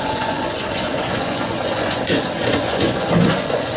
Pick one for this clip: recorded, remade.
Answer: remade